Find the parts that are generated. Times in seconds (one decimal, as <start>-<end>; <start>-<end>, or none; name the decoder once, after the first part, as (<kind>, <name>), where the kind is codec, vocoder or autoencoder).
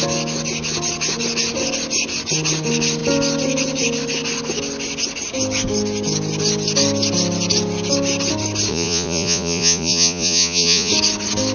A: 8.7-10.9 (vocoder, Vocos)